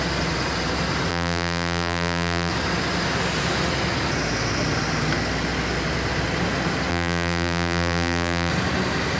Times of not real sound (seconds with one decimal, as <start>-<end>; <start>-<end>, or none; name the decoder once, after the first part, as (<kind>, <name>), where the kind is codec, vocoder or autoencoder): 1.1-2.5 (vocoder, BigVGAN v2); 6.9-8.5